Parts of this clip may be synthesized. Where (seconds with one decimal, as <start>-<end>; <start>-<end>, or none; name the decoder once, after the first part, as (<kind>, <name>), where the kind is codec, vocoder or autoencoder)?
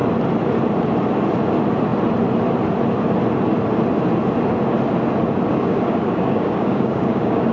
5.5-7.5 (codec, DAC)